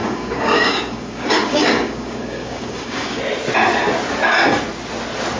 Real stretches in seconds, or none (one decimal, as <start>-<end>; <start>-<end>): 3.2-5.4